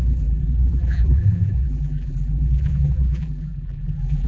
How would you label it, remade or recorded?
remade